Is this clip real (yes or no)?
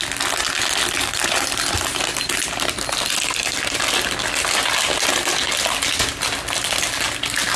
yes